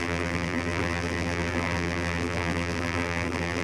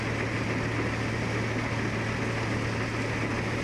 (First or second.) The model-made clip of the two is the first